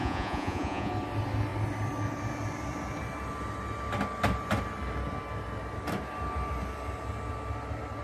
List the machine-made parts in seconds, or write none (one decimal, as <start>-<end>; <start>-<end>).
0.0-0.9